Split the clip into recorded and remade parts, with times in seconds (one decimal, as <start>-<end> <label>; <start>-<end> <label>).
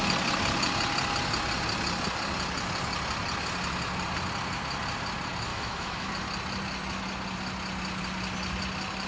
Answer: 0.0-5.5 recorded; 5.5-6.1 remade; 6.1-9.1 recorded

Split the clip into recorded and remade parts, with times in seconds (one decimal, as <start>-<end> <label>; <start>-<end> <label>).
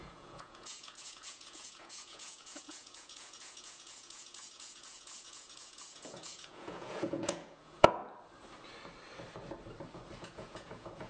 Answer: 0.0-8.0 remade; 8.0-10.2 recorded; 10.2-11.1 remade